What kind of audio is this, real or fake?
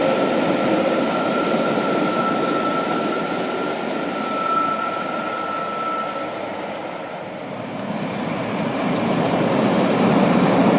real